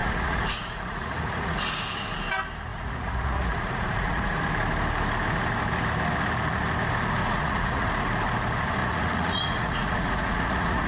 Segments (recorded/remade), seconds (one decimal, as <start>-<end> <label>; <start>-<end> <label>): 0.0-1.6 remade; 1.6-2.7 recorded; 2.7-4.4 remade; 4.4-7.2 recorded; 7.2-7.9 remade; 7.9-8.8 recorded; 8.8-10.9 remade